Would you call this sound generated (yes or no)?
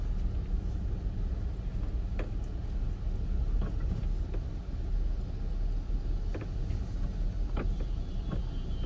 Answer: no